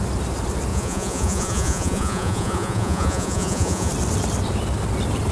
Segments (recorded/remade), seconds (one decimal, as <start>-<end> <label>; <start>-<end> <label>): 0.0-0.7 recorded; 0.7-3.9 remade; 3.9-5.3 recorded